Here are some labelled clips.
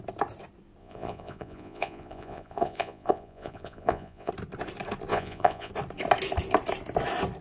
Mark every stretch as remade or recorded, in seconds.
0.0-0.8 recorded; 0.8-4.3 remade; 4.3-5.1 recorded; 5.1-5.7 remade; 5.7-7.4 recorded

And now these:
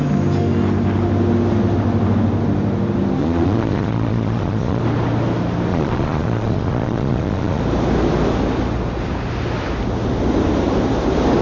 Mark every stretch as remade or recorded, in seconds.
0.0-3.2 recorded; 3.2-4.8 remade; 4.8-5.7 recorded; 5.7-7.6 remade; 7.6-11.4 recorded

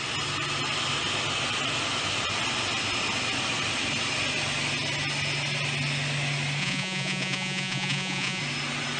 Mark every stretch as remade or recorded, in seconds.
0.0-6.6 recorded; 6.6-8.4 remade; 8.4-9.0 recorded

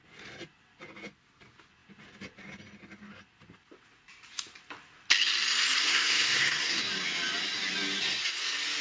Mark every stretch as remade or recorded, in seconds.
0.0-5.8 recorded; 5.8-6.8 remade; 6.8-8.8 recorded

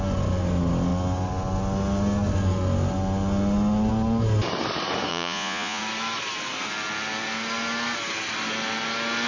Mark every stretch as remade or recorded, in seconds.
0.0-5.1 recorded; 5.1-5.8 remade; 5.8-9.3 recorded

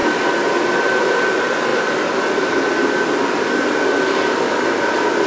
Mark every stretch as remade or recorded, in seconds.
0.0-5.3 recorded

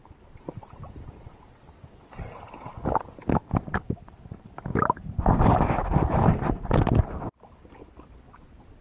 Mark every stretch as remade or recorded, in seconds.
0.0-8.8 recorded